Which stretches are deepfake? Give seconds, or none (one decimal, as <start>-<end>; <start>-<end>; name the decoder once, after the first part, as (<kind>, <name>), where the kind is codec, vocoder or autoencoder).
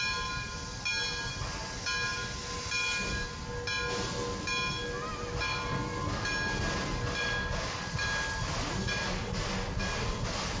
none